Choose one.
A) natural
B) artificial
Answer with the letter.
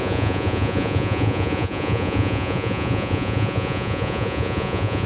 B